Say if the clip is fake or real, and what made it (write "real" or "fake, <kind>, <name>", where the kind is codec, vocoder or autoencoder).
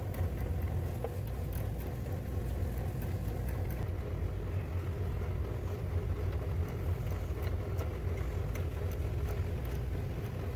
real